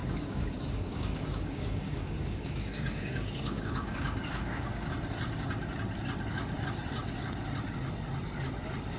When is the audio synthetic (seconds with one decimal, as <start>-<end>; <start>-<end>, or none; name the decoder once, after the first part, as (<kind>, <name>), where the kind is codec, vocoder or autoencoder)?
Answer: 0.0-4.9 (codec, DAC)